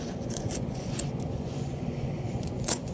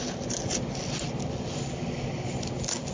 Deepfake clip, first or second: first